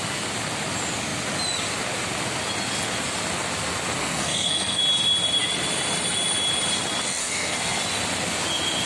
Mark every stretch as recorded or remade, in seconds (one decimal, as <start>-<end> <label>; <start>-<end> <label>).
0.0-4.0 recorded; 4.0-4.8 remade; 4.8-7.2 recorded; 7.2-7.8 remade; 7.8-8.9 recorded